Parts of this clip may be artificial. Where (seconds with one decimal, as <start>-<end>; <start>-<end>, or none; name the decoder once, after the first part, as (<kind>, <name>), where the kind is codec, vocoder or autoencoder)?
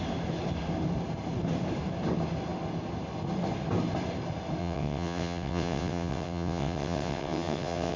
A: 4.6-8.0 (vocoder, WaveNeXt)